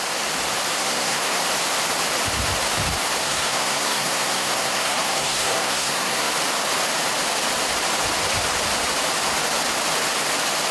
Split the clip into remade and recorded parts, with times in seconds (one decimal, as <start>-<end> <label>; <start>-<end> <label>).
0.0-0.8 recorded; 0.8-1.4 remade; 1.4-3.2 recorded; 3.2-6.3 remade; 6.3-10.7 recorded